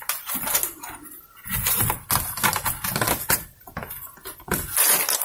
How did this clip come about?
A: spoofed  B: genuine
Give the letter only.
B